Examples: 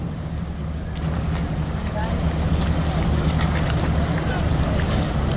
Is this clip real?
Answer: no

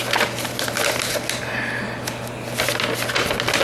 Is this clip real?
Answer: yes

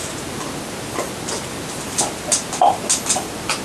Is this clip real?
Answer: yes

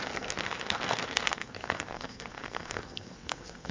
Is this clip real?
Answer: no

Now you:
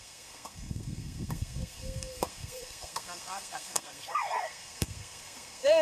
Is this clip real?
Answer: no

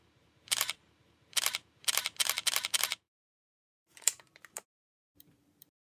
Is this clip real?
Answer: no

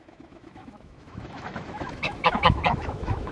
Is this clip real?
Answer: no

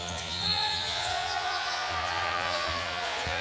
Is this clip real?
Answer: no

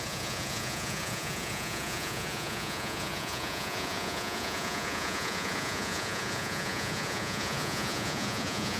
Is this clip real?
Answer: no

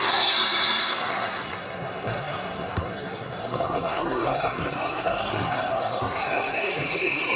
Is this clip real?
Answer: no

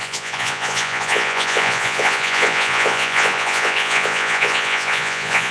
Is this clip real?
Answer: no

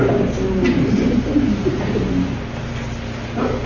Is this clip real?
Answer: yes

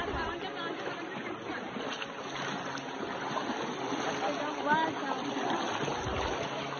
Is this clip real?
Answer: yes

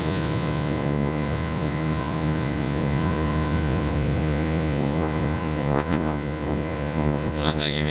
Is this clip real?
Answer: no